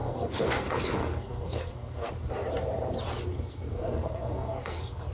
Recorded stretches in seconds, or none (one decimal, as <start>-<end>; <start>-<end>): 2.1-3.3